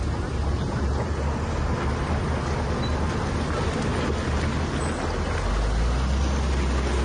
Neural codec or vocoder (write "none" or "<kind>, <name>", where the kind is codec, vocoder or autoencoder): none